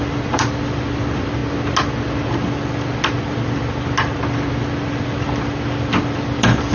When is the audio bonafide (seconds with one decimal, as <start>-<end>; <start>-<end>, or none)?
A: 1.4-4.9